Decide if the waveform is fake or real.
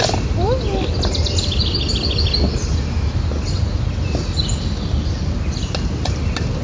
real